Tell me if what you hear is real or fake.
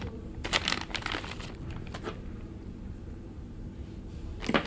real